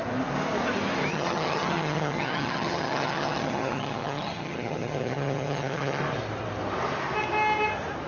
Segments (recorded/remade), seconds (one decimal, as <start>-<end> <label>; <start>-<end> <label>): 0.0-1.1 recorded; 1.1-6.0 remade; 6.0-8.1 recorded